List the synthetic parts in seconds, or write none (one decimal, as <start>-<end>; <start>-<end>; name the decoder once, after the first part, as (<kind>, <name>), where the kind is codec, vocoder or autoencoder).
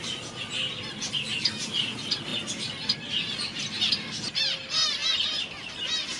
none